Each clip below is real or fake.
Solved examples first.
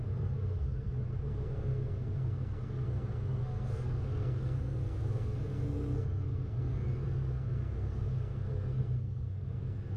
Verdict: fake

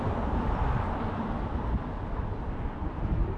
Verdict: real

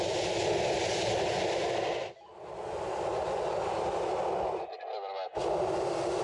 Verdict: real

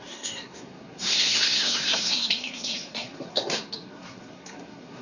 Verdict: fake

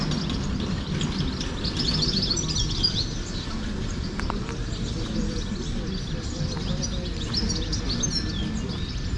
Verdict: real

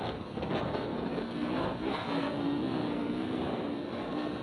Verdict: fake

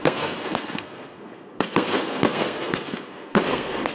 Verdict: fake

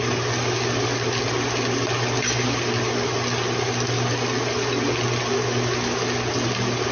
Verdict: real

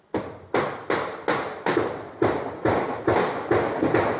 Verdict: real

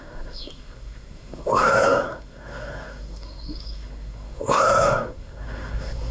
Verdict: fake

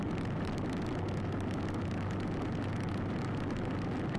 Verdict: real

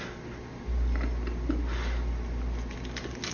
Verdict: real